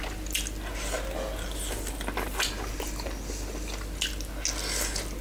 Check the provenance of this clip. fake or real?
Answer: real